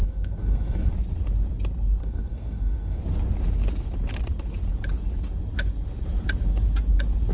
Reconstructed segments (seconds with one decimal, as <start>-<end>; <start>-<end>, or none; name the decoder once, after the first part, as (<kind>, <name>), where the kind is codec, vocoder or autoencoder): 0.0-0.9 (codec, SNAC); 2.0-3.0